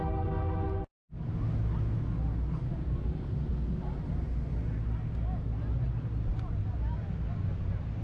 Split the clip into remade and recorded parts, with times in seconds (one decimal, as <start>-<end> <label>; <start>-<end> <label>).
0.0-2.7 recorded; 2.7-3.5 remade; 3.5-8.0 recorded